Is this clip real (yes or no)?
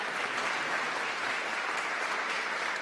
no